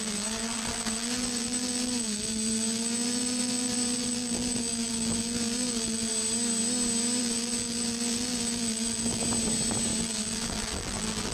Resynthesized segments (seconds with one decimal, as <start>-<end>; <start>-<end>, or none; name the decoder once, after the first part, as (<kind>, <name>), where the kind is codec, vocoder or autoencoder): 0.0-6.1 (vocoder, BigVGAN v2); 7.2-9.2; 10.0-11.3